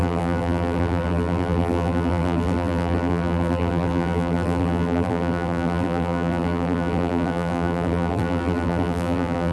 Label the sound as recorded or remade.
remade